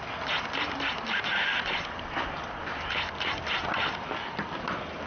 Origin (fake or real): real